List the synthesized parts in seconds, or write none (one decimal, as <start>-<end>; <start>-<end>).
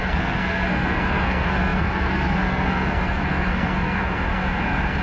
0.0-5.0